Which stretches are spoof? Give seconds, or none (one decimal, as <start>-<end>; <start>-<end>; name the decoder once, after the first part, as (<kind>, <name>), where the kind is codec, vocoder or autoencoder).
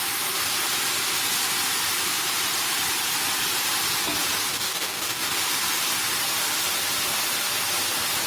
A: 4.5-5.3 (codec, DAC)